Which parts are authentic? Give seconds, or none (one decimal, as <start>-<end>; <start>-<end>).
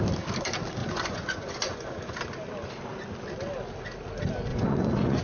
0.0-0.8; 2.2-4.5